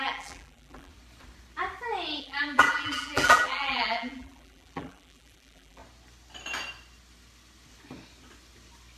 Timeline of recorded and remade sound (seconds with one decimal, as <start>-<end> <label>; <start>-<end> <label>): 0.0-0.9 remade; 0.9-2.2 recorded; 2.2-5.8 remade; 5.8-9.0 recorded